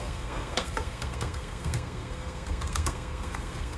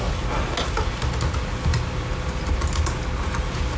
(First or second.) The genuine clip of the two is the second